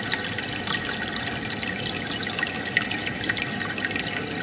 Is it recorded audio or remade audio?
recorded